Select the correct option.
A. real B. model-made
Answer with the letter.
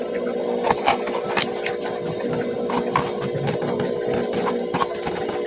A